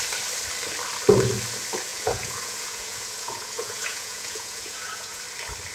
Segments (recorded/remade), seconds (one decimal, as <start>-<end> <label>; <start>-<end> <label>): 0.0-1.9 recorded; 1.9-5.2 remade; 5.2-5.7 recorded